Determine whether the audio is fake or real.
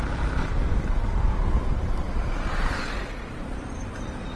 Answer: fake